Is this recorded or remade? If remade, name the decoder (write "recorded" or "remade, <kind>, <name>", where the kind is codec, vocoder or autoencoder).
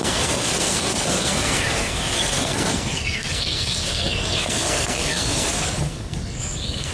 remade, codec, SNAC